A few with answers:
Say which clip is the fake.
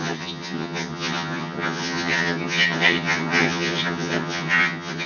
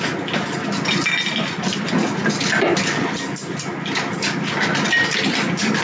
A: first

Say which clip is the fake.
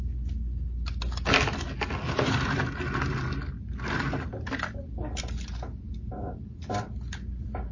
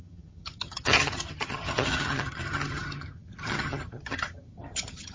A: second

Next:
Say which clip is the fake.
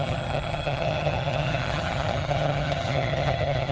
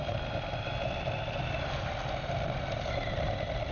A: first